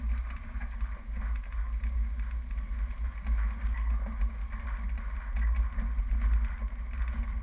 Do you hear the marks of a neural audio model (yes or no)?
no